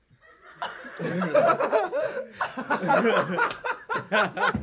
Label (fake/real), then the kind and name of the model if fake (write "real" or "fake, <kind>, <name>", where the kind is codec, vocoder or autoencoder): fake, vocoder, Vocos